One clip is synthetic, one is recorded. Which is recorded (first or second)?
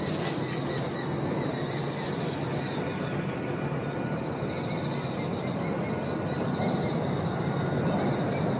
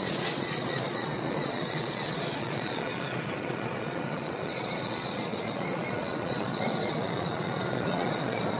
first